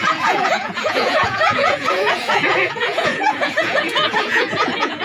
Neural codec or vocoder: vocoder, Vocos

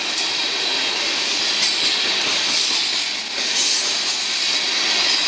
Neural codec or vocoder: none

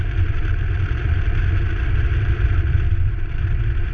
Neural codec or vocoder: vocoder, BigVGAN v2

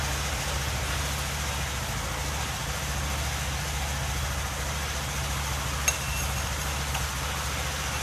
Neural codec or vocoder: none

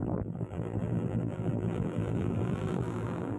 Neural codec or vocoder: vocoder, BigVGAN v2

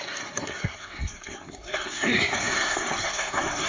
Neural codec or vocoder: codec, SNAC